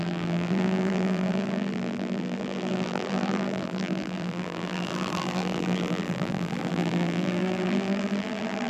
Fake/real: fake